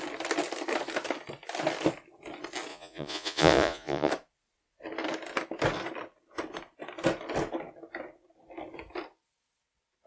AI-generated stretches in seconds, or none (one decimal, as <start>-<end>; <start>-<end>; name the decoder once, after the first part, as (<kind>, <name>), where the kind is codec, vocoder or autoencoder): 2.7-4.1 (vocoder, Vocos)